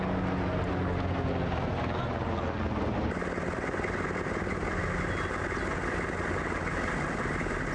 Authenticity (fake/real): real